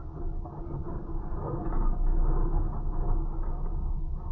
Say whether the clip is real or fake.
real